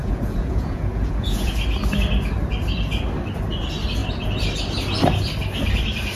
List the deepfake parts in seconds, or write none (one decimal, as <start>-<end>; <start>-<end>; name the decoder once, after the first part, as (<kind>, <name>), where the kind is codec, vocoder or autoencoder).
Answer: 0.0-1.5 (vocoder, Vocos)